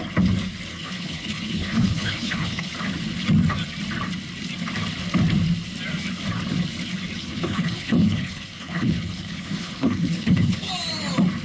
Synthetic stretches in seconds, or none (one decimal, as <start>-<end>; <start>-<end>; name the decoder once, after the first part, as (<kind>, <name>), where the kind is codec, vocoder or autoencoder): 0.7-2.7 (codec, HILCodec); 7.2-10.7